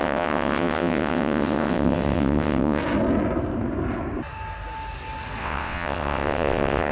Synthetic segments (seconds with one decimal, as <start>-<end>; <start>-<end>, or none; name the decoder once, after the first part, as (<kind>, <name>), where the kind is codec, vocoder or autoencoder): 0.0-2.8 (vocoder, WaveNeXt); 5.4-6.9